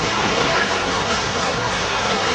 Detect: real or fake fake